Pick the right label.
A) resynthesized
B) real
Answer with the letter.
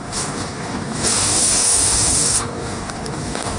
A